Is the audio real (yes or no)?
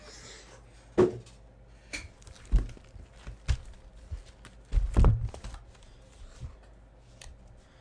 yes